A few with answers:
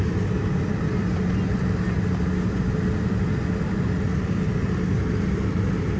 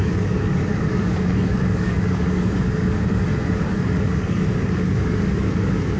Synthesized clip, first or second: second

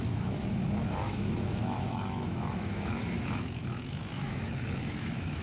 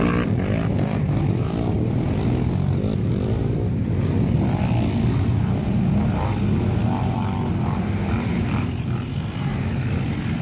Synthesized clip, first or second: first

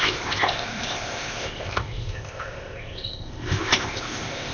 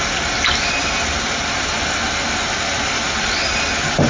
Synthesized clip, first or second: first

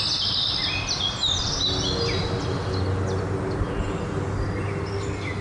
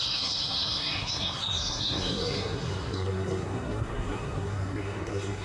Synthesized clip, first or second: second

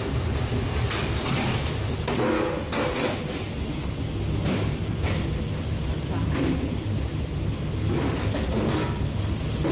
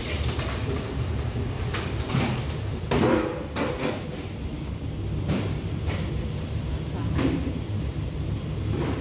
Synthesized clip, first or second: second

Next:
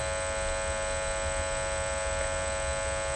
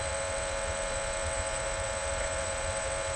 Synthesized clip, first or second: second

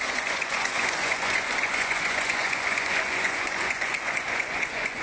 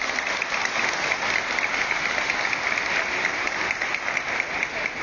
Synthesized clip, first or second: first